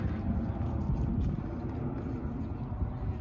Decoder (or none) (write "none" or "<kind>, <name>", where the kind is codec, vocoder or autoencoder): none